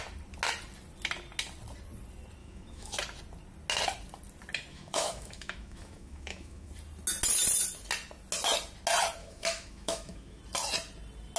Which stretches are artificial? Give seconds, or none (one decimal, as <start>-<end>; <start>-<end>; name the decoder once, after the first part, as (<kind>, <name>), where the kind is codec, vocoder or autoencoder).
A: 2.4-3.0 (autoencoder, DAC-VAE); 4.7-6.7; 9.2-10.4